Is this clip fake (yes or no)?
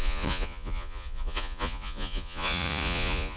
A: yes